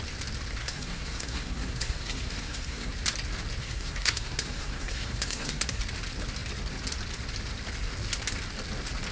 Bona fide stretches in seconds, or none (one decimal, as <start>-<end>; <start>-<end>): 0.0-0.6; 2.9-3.6; 5.8-9.1